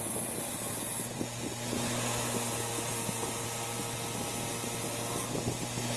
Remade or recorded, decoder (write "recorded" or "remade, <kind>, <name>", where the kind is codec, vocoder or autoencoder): recorded